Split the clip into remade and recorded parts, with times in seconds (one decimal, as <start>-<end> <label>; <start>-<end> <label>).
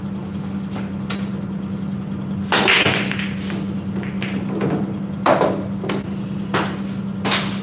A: 0.0-7.6 recorded